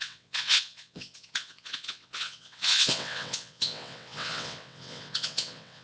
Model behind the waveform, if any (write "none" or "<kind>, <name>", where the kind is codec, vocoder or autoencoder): vocoder, WaveNeXt